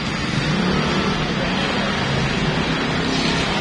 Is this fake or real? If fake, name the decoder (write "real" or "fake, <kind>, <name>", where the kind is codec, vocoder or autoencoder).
real